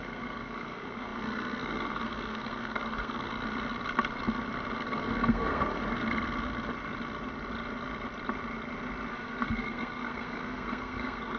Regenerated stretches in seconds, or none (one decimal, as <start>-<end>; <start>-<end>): 0.0-3.3; 4.8-5.8; 9.1-11.4